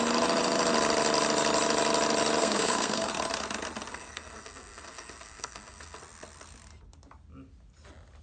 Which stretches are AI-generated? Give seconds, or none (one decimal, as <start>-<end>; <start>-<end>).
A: 2.4-3.1; 3.9-6.0